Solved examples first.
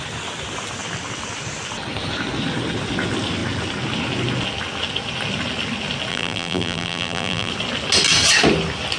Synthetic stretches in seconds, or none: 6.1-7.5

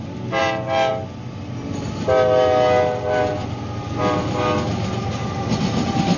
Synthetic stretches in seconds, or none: none

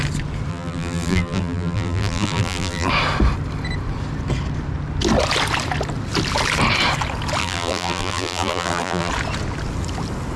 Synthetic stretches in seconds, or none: 0.5-2.9; 7.4-9.1

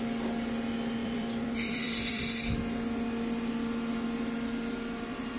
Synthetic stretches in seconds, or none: 1.0-2.2

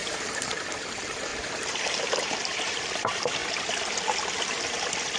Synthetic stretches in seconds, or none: 0.0-3.4

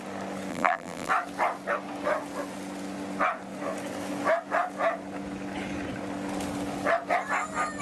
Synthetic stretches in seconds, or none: 0.5-1.1

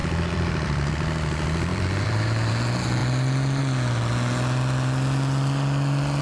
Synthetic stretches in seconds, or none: 0.0-0.9; 1.7-2.5

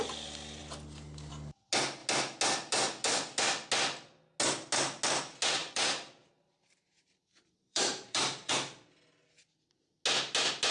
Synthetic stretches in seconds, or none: 5.6-8.5